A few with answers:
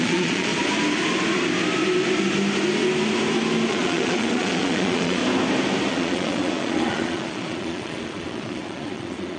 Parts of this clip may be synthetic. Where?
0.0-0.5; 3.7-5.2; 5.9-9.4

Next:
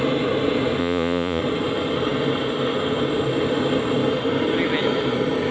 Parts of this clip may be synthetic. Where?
0.8-1.4

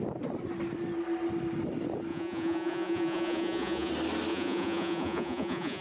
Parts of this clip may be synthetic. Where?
2.1-3.9; 4.3-5.8

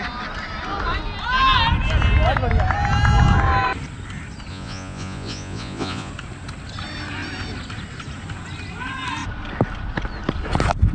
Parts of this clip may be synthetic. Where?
4.5-6.1

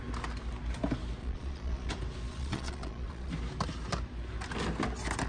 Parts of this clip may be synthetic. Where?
1.2-1.9; 2.3-3.3

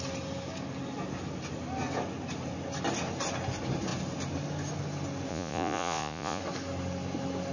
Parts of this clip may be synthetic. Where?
5.3-6.4

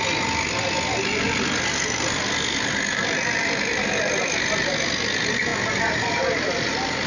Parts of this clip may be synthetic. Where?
none